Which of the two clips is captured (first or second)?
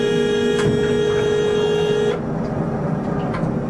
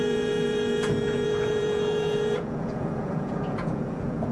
first